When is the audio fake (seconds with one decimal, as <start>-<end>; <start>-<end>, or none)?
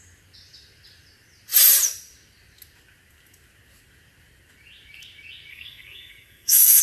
5.5-6.8